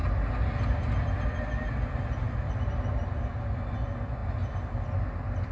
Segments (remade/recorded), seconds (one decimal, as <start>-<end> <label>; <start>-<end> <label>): 0.0-5.5 recorded